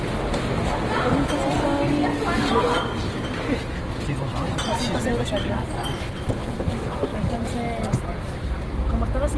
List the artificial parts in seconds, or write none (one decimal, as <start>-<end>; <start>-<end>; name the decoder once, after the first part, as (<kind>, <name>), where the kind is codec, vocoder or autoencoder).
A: none

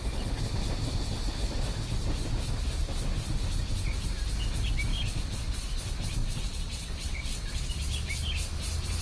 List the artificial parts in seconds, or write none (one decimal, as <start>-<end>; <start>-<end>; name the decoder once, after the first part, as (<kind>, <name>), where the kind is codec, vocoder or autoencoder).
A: 6.2-7.7 (vocoder, WaveNeXt)

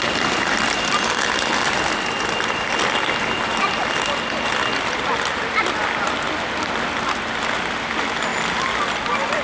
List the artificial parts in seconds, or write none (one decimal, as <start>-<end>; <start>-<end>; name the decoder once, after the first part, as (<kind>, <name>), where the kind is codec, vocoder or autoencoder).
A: none